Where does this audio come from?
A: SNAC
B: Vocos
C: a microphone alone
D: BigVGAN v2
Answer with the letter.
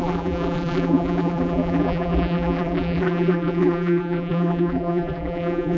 D